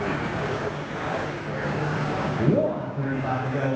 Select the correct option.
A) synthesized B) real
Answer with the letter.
A